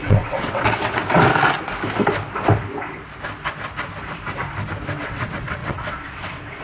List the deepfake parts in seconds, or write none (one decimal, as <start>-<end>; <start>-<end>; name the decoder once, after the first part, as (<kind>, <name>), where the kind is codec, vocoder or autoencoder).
0.0-1.0 (vocoder, WaveNeXt); 5.0-6.6